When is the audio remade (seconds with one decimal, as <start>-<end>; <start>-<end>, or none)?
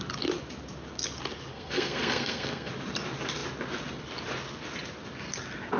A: 1.5-2.7